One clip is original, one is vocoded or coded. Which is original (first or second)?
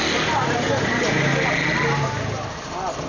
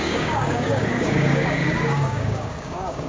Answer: first